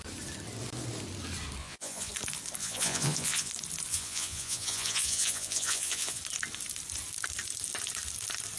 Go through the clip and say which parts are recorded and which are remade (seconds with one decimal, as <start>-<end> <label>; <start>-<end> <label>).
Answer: 0.0-1.6 recorded; 1.6-2.1 remade; 2.1-2.6 recorded; 2.6-3.5 remade; 3.5-3.9 recorded; 3.9-6.2 remade; 6.2-8.6 recorded